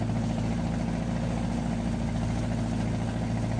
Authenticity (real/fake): real